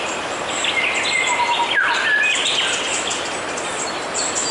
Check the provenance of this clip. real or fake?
real